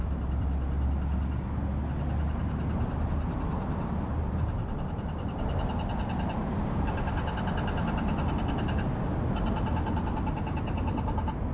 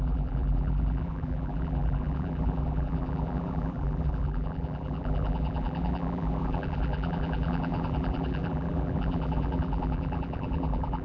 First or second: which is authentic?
first